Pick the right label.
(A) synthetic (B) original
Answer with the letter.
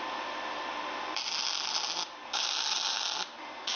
B